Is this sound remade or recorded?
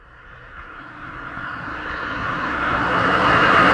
remade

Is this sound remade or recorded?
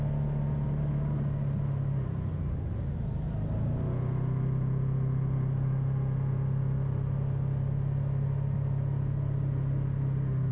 recorded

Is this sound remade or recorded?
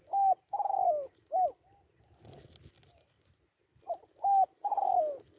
recorded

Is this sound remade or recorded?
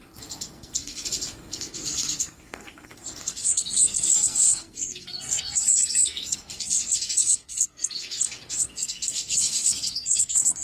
remade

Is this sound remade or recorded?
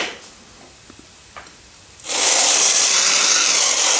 recorded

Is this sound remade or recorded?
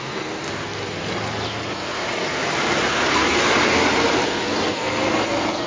recorded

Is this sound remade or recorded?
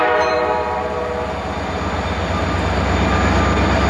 recorded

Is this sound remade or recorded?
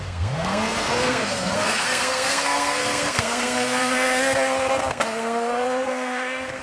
remade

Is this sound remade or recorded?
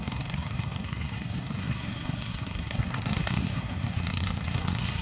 remade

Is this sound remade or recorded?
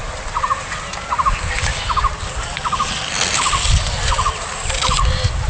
recorded